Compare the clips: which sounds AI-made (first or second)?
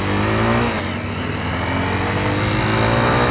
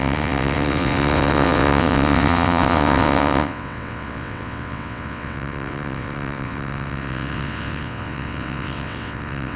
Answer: second